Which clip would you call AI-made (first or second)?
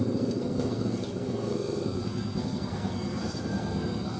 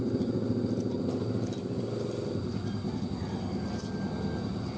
first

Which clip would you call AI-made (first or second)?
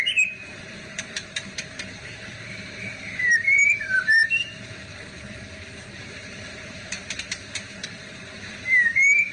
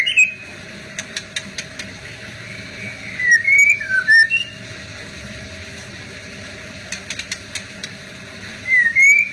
first